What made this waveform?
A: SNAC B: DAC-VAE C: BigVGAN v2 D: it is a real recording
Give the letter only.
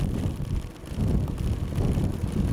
D